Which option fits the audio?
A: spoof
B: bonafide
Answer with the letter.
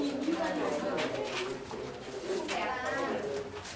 B